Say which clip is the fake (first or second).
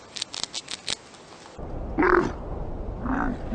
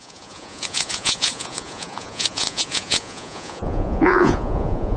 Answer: second